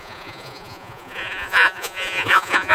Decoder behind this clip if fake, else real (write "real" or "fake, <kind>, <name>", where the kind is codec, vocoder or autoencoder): fake, vocoder, Vocos